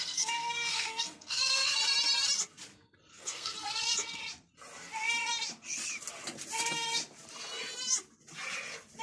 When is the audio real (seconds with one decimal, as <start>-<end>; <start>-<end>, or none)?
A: 1.8-3.1; 4.2-9.0